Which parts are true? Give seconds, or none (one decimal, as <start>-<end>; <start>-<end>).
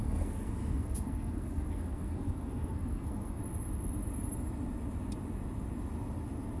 3.4-6.6